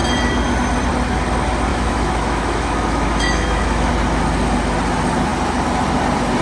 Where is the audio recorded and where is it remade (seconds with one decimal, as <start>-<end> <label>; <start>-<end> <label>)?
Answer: 0.0-1.7 recorded; 1.7-3.9 remade; 3.9-6.4 recorded